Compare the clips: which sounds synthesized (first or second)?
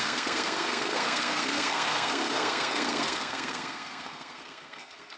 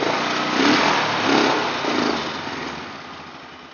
first